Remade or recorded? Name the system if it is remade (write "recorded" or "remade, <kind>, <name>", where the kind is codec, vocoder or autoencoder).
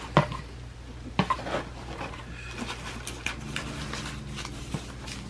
recorded